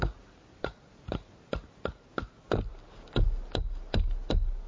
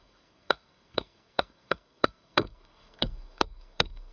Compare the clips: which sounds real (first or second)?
first